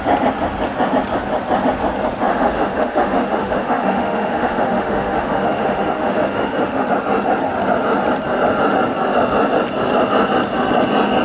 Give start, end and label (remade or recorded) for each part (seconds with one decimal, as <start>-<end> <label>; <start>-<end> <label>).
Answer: 0.0-2.3 recorded; 2.3-6.9 remade; 6.9-11.2 recorded